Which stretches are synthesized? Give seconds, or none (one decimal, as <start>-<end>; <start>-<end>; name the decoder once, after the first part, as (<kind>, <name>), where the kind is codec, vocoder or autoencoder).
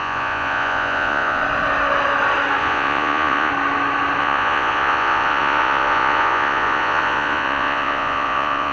0.0-1.4 (vocoder, Vocos); 2.6-3.5; 4.2-8.7